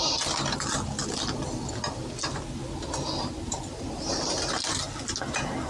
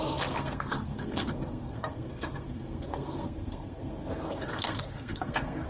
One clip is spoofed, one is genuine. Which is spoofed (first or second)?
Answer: second